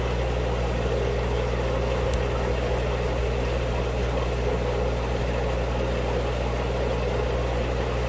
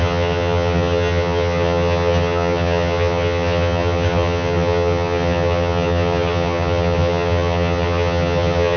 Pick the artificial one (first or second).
second